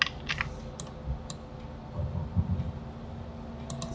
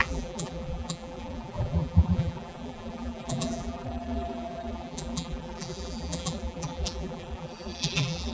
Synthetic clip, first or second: second